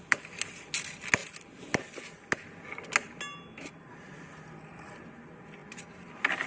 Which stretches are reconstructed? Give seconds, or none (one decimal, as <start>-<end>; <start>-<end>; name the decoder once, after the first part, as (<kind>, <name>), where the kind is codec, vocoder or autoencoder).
none